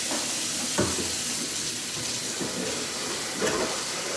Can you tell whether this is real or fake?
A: real